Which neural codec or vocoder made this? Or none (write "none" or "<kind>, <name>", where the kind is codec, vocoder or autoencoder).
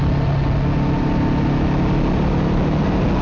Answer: none